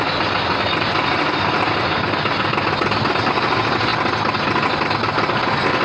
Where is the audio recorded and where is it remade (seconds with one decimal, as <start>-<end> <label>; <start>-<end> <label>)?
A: 0.0-5.8 recorded